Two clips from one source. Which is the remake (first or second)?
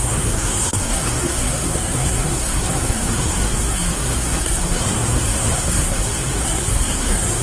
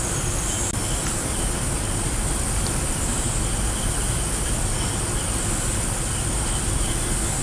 first